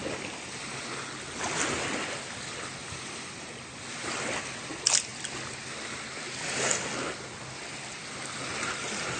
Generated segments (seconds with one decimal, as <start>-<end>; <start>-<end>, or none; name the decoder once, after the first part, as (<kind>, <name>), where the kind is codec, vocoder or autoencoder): 8.5-9.2 (vocoder, BigVGAN v2)